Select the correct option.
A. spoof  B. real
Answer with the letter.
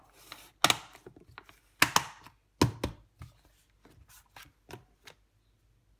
B